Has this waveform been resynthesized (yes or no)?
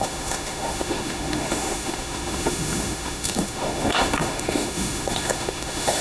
yes